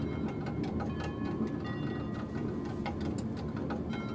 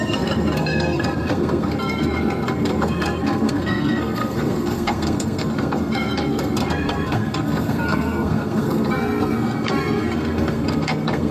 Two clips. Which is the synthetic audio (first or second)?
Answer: second